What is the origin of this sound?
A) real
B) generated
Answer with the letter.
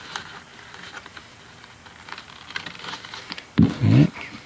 A